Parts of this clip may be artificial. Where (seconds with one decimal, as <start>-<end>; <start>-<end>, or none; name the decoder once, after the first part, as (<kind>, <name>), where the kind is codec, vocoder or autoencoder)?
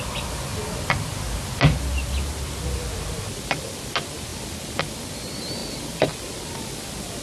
none